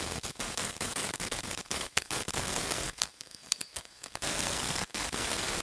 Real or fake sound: fake